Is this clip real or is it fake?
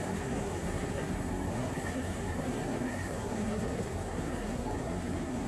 fake